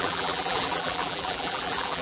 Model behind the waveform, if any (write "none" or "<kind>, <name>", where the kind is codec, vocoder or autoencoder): vocoder, BigVGAN v2